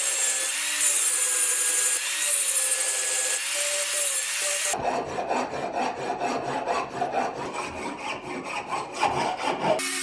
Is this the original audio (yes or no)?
yes